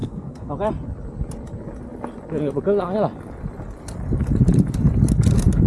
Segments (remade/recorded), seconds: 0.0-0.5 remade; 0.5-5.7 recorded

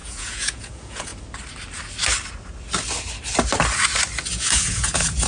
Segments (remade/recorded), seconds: 0.0-1.1 remade; 1.1-4.3 recorded; 4.3-5.3 remade

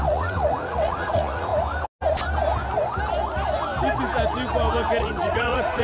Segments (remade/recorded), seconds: 0.0-1.5 remade; 1.5-5.0 recorded; 5.0-5.8 remade

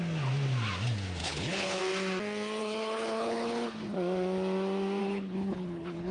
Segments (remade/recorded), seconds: 0.0-1.2 recorded; 1.2-1.8 remade; 1.8-2.6 recorded; 2.6-3.7 remade; 3.7-5.0 recorded; 5.0-6.1 remade

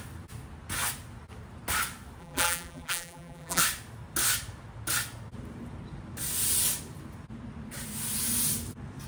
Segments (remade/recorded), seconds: 0.0-2.2 recorded; 2.2-3.6 remade; 3.6-9.1 recorded

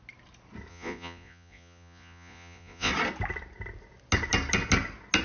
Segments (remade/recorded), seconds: 0.0-0.7 recorded; 0.7-2.9 remade; 2.9-5.2 recorded

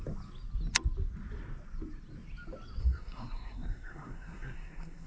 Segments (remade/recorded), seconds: 0.0-2.8 recorded; 2.8-5.1 remade